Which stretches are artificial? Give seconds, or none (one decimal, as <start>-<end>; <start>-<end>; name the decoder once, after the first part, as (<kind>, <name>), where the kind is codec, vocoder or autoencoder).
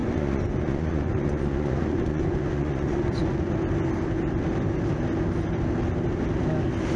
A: 0.0-3.5 (vocoder, Vocos)